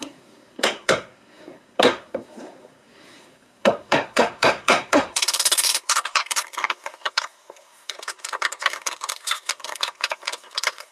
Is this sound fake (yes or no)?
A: yes